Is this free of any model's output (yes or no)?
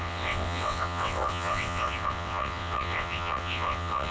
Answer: no